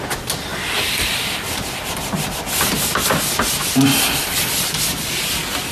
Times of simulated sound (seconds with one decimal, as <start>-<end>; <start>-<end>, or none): 0.5-2.5